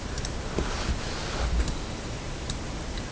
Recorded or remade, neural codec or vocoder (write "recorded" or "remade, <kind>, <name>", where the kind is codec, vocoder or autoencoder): remade, vocoder, BigVGAN v2